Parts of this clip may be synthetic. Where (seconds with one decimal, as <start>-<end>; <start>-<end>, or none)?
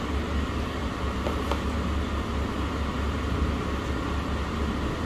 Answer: none